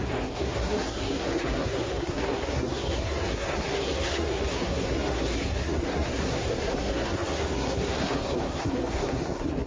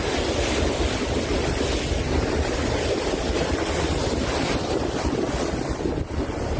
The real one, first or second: second